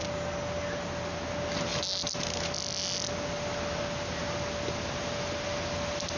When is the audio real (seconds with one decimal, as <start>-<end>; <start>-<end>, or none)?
0.0-6.2